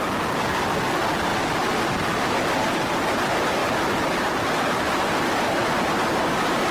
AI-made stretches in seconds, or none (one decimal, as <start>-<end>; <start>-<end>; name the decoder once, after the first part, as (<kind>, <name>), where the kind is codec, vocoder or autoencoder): 3.6-6.7 (vocoder, BigVGAN v2)